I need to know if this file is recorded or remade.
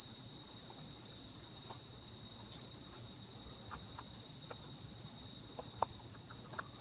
remade